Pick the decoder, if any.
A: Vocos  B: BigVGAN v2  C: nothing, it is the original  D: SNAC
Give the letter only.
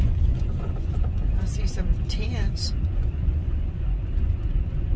A